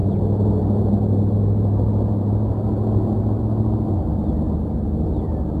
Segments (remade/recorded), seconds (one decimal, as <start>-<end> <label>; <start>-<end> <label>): 0.0-5.6 recorded